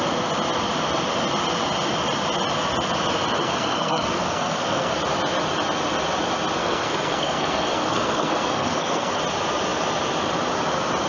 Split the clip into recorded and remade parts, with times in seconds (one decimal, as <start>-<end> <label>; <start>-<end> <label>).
0.0-3.4 recorded; 3.4-4.9 remade; 4.9-6.6 recorded; 6.6-9.2 remade; 9.2-11.1 recorded